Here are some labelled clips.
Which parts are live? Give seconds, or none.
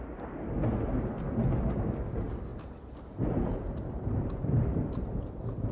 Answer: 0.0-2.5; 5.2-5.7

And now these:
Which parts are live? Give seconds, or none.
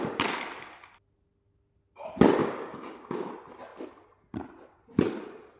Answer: 0.0-2.4; 3.3-5.6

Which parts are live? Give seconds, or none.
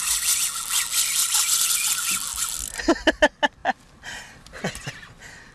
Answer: 0.0-3.6; 4.6-5.5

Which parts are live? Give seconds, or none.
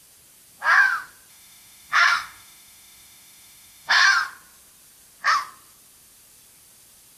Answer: 0.0-1.3; 4.0-7.2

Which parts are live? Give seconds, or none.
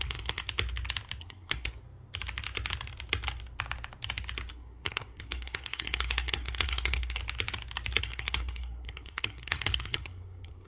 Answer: 0.4-1.2; 1.8-4.5; 7.2-8.0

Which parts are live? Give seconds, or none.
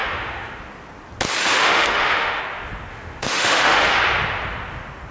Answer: 0.6-1.4; 2.4-2.9; 4.0-5.1